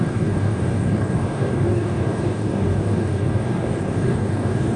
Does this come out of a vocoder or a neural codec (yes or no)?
yes